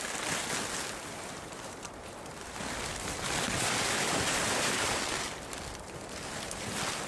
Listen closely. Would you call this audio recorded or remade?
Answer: recorded